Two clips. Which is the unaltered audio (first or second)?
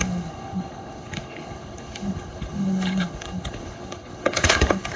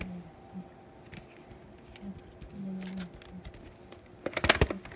second